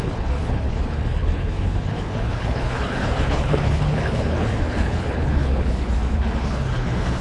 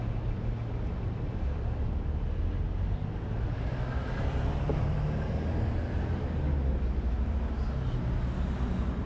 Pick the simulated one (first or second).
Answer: first